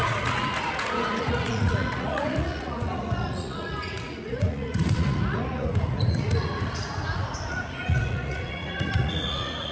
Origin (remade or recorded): remade